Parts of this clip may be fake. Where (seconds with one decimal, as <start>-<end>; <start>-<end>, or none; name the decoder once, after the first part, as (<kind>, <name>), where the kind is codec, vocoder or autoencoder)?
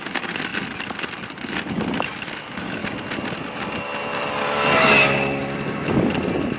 5.4-6.1 (vocoder, BigVGAN v2)